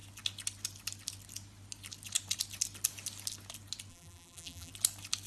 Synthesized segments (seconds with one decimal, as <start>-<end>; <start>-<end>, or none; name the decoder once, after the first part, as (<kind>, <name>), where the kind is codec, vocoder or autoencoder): 3.9-4.7 (vocoder, BigVGAN v2)

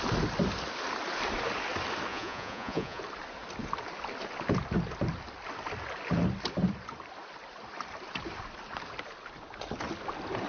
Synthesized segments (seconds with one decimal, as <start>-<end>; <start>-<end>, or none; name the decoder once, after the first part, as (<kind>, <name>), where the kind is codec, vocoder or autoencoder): 2.1-3.0 (vocoder, Vocos)

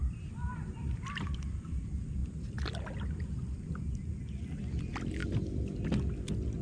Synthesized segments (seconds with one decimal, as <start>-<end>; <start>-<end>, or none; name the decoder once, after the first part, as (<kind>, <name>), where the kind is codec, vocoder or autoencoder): none

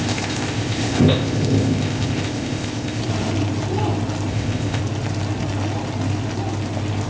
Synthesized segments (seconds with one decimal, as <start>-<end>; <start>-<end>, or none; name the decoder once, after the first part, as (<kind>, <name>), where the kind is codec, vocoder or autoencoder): 0.0-3.0 (codec, ZipCodec); 4.3-4.8

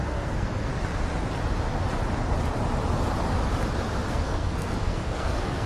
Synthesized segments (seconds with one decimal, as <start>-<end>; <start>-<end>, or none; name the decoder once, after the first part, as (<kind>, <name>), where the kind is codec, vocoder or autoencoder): 0.0-0.7 (codec, SNAC); 4.1-5.7

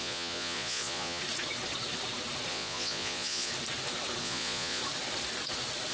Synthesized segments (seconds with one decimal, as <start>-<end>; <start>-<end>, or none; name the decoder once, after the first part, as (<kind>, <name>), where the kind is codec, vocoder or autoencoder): 0.0-1.2 (vocoder, Vocos); 2.5-3.5; 4.2-4.8

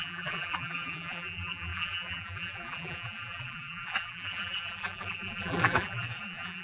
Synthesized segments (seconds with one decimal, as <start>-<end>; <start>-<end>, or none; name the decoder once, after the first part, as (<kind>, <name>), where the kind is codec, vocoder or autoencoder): 0.0-6.6 (vocoder, BigVGAN v2)